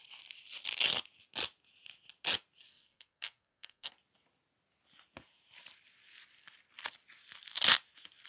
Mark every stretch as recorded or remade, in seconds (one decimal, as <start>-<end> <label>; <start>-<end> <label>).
0.0-2.7 recorded; 2.7-3.9 remade; 3.9-8.3 recorded